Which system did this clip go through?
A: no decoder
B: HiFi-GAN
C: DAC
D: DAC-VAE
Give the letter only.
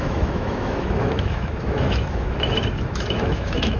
D